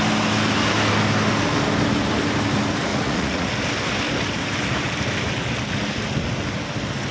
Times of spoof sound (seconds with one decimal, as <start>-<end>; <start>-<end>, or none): 2.9-3.5